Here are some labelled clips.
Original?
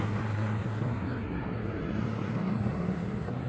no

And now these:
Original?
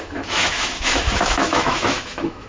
no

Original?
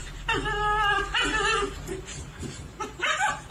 yes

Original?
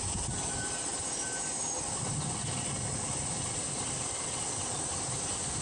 yes